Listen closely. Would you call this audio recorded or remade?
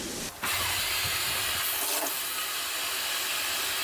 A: recorded